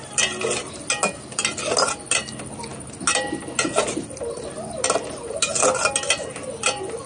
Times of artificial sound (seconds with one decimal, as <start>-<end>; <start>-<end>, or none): none